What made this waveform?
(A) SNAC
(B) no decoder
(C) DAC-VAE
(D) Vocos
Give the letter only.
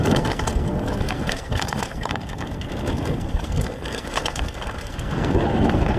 A